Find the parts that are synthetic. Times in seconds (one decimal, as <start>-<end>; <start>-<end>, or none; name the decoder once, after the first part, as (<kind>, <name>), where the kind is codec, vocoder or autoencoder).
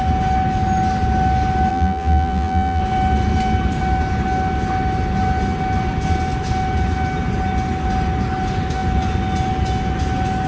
1.7-2.8 (vocoder, BigVGAN v2)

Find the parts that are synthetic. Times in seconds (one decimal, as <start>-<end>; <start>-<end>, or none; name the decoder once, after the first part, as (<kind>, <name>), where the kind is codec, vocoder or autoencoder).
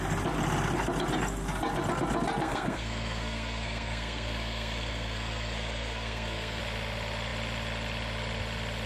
2.4-6.6 (codec, SNAC)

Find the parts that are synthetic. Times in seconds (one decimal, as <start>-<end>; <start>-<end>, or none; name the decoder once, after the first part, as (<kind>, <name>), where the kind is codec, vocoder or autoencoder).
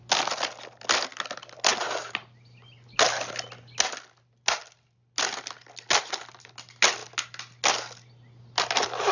none